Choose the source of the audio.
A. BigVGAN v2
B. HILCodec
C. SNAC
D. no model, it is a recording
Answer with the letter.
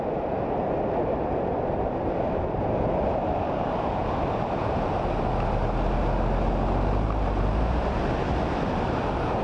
D